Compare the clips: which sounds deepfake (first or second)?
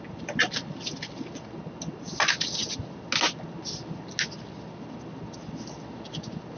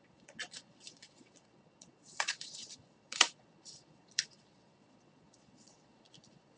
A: second